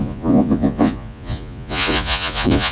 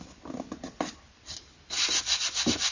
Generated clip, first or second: first